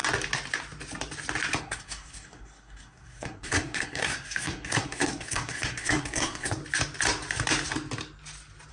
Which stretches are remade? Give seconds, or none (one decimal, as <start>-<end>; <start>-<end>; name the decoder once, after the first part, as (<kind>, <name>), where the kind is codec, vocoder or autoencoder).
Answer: 1.6-6.6 (codec, SNAC)